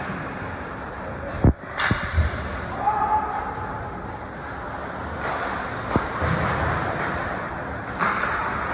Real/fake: real